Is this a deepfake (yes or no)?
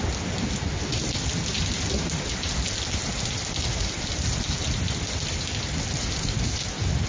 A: no